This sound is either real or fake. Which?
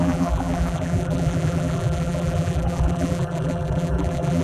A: fake